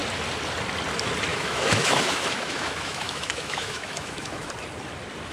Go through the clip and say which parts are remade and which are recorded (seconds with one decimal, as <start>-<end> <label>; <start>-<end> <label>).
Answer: 0.0-1.3 recorded; 1.3-4.5 remade; 4.5-5.3 recorded